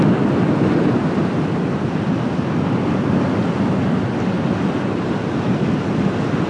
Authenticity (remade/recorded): recorded